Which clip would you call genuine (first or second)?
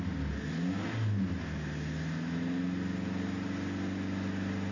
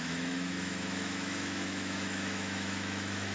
first